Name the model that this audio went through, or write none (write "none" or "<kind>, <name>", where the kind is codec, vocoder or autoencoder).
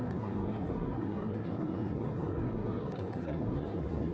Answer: codec, SNAC